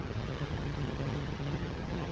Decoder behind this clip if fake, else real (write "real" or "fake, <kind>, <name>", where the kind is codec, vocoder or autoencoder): fake, vocoder, HiFi-GAN